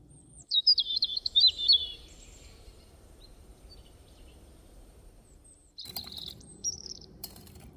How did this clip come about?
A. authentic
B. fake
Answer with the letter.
B